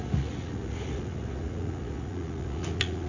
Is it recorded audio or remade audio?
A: remade